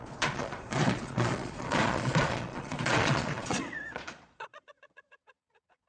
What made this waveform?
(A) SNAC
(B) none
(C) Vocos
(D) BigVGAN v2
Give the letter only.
C